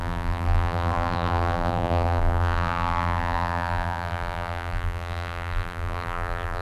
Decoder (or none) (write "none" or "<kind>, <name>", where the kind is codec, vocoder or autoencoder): vocoder, BigVGAN v2